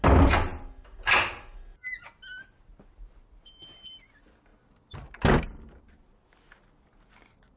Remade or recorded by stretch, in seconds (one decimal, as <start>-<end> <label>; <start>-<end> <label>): 0.0-7.6 recorded